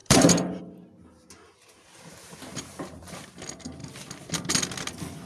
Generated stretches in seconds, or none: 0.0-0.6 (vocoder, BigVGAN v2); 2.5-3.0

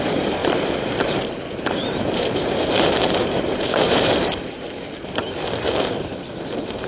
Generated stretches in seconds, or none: 0.0-5.2 (vocoder, BigVGAN v2); 5.9-6.9

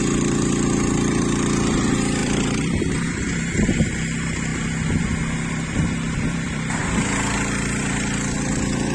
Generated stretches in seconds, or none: 0.0-4.5 (vocoder, BigVGAN v2); 5.5-6.8; 7.8-8.9

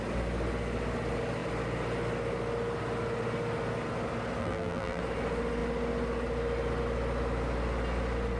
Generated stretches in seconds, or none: 4.4-5.0 (vocoder, BigVGAN v2)

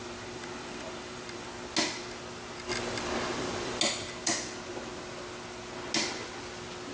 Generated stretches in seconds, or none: 0.0-1.5 (vocoder, BigVGAN v2); 2.7-3.8